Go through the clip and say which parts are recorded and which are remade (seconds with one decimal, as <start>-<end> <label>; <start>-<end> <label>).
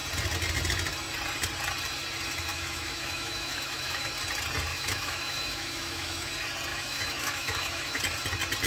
0.0-2.5 recorded; 2.5-4.1 remade; 4.1-4.7 recorded; 4.7-6.3 remade; 6.3-6.7 recorded; 6.7-8.0 remade; 8.0-8.7 recorded